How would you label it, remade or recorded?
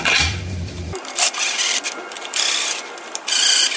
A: remade